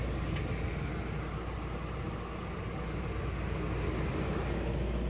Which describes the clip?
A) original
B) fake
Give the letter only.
A